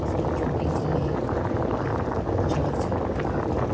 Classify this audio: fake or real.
real